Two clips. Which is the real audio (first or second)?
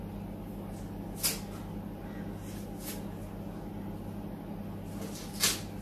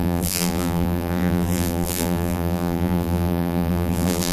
first